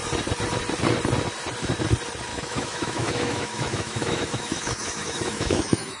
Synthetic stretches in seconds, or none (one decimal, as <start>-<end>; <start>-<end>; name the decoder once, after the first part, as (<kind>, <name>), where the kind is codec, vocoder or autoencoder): 2.3-6.0 (autoencoder, DAC-VAE)